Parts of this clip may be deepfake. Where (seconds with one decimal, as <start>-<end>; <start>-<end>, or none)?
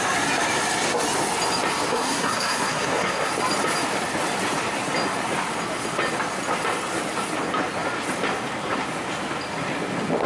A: 1.9-3.3